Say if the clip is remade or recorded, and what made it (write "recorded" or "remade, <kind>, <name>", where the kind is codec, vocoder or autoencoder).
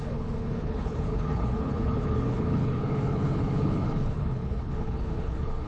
remade, codec, HILCodec